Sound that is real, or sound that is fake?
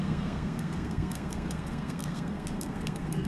fake